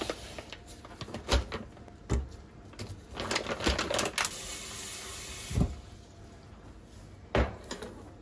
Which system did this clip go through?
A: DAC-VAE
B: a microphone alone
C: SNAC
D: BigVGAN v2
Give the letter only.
B